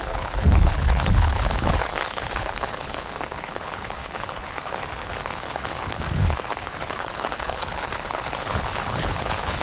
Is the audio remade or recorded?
remade